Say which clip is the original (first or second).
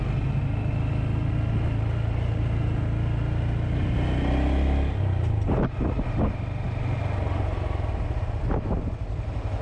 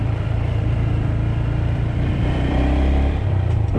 first